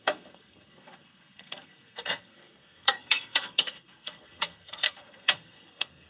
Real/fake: fake